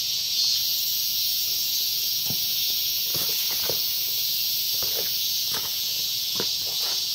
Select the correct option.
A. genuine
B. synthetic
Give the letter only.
B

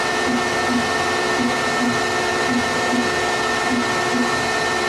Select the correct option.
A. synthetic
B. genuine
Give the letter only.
B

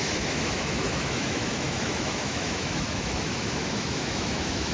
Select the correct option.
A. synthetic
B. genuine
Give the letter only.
A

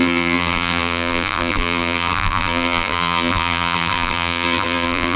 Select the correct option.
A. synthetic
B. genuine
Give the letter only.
A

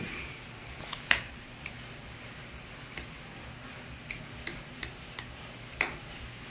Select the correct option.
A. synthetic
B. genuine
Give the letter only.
B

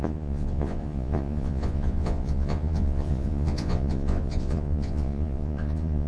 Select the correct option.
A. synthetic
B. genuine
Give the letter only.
A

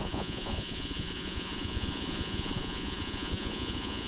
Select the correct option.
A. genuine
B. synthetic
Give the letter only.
B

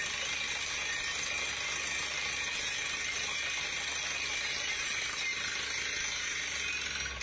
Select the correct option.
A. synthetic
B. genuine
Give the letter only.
B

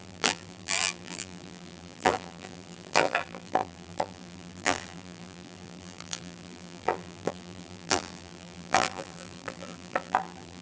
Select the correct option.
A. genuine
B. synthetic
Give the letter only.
B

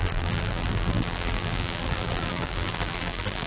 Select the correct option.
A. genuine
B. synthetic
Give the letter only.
B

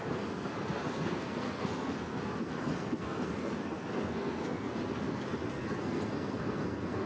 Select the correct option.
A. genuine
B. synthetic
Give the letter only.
B